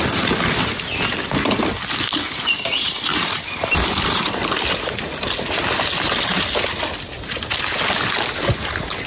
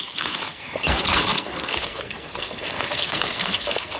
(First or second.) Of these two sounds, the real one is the first